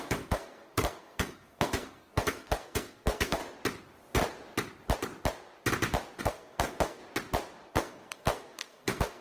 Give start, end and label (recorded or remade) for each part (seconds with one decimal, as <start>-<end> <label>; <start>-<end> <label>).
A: 0.0-3.4 remade; 3.4-6.2 recorded; 6.2-7.0 remade; 7.0-7.7 recorded; 7.7-9.2 remade